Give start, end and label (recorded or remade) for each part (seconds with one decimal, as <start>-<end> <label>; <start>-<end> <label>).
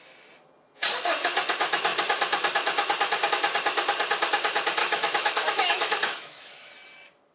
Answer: 0.0-4.8 recorded; 4.8-6.7 remade; 6.7-7.3 recorded